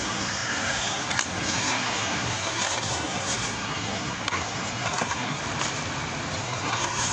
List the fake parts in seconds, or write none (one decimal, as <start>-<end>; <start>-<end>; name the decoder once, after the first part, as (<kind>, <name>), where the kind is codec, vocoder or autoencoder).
0.0-5.4 (codec, SNAC); 6.4-7.1